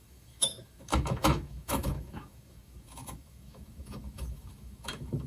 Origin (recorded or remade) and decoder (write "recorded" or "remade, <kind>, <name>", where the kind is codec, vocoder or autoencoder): remade, autoencoder, DAC-VAE